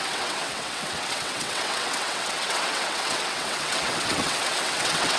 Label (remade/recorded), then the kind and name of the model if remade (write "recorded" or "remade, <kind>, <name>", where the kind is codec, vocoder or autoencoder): remade, vocoder, WaveNeXt